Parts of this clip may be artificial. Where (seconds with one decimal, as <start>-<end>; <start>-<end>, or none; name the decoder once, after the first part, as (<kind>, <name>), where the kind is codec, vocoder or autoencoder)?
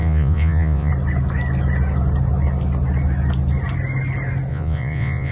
0.0-0.9 (vocoder, Vocos); 4.5-5.3